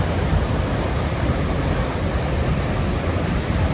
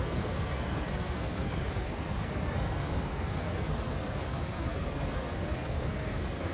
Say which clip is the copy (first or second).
second